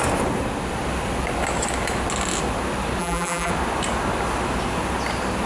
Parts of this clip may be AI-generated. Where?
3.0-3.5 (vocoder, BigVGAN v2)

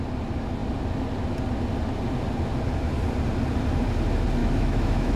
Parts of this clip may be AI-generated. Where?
4.4-5.2 (autoencoder, DAC-VAE)